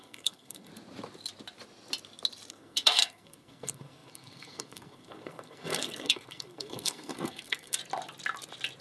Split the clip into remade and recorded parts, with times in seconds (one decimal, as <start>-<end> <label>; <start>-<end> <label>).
0.0-0.7 remade; 0.7-2.5 recorded; 2.5-7.8 remade; 7.8-8.8 recorded